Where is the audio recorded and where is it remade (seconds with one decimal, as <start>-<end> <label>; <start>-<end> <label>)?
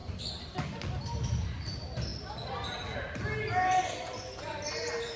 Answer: 0.0-5.2 recorded